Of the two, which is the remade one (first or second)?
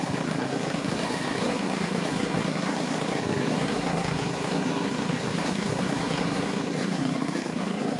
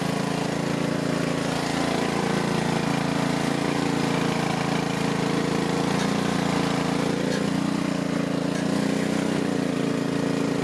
first